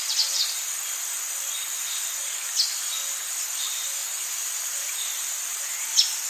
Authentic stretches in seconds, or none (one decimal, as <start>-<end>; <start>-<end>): 0.0-4.0